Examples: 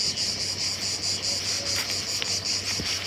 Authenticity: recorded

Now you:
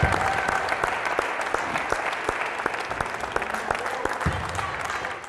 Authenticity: recorded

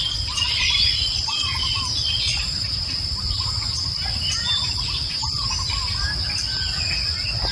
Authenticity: recorded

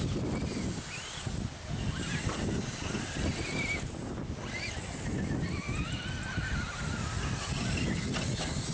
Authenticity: recorded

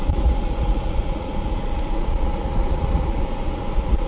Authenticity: remade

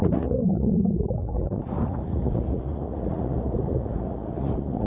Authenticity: remade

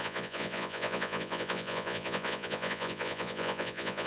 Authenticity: remade